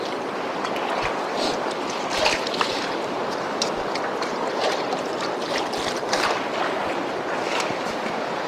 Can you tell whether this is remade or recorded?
remade